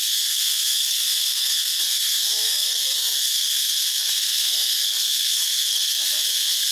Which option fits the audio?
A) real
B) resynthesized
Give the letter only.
B